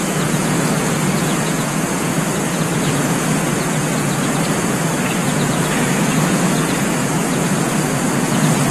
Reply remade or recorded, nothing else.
remade